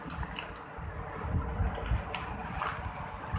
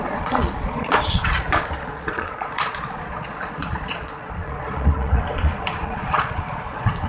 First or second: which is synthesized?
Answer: second